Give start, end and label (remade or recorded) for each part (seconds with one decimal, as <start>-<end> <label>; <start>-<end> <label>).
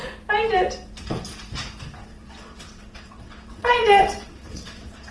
0.0-2.0 recorded; 2.0-5.1 remade